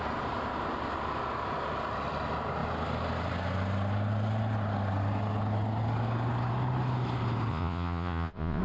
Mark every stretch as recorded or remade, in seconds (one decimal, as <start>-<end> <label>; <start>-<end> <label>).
0.0-7.5 recorded; 7.5-8.6 remade